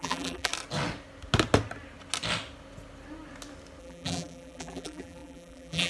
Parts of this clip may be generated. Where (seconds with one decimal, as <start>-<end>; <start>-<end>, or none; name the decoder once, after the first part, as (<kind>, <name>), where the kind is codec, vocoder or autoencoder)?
0.0-0.5 (vocoder, BigVGAN v2); 3.8-5.9